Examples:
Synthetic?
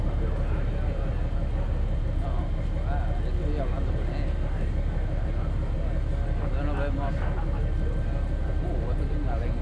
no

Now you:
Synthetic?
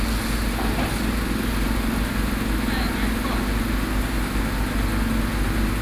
no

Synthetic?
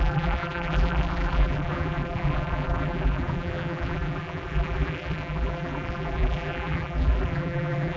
yes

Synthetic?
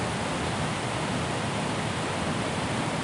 no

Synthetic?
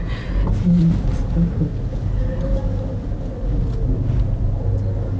no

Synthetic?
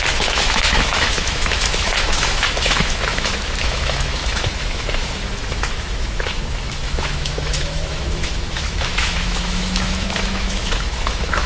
yes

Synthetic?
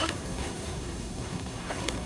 yes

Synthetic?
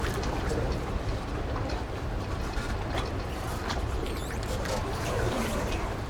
yes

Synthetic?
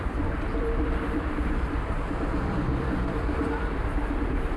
yes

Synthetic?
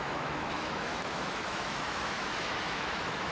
yes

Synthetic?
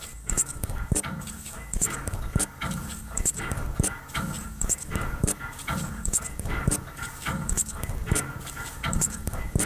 yes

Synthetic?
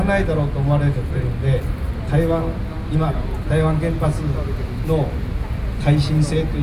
no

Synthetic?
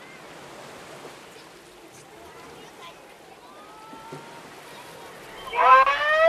no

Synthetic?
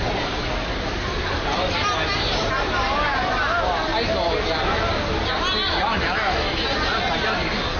no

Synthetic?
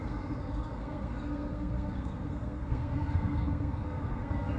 yes